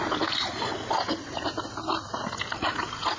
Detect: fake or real real